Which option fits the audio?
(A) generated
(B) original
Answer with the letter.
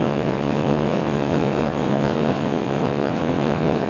A